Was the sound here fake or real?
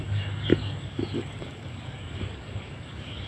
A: fake